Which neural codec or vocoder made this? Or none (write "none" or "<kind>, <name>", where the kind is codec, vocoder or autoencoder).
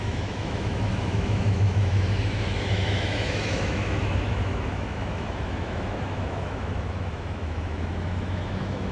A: autoencoder, DAC-VAE